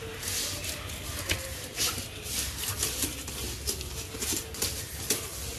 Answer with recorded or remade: recorded